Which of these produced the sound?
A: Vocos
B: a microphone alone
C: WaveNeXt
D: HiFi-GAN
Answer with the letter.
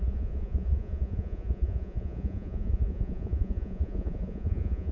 A